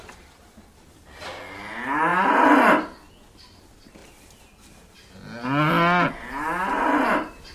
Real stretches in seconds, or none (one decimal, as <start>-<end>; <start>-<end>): 0.0-7.5